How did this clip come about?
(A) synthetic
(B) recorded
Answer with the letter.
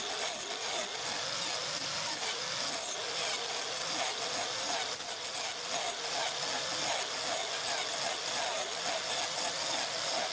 B